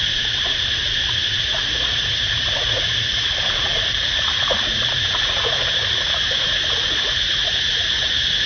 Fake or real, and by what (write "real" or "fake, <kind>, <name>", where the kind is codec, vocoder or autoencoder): fake, vocoder, Vocos